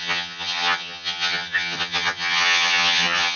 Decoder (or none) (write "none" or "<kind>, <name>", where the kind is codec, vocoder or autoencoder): vocoder, HiFi-GAN